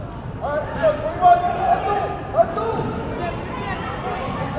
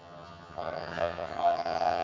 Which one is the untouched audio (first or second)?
first